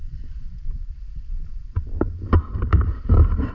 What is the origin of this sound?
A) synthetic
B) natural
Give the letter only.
A